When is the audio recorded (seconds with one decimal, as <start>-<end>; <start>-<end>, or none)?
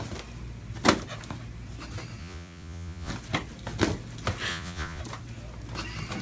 0.0-2.2; 3.1-4.5; 5.0-6.2